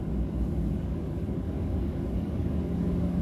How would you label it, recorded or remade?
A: remade